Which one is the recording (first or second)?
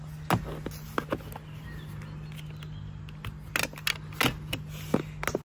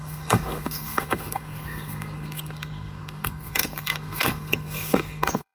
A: first